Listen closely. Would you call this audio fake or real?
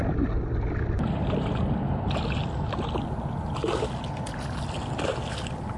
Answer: real